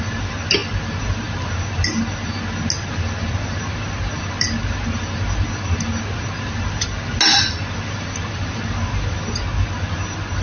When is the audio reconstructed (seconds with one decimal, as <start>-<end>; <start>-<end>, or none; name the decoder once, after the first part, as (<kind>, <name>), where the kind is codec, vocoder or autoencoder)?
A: none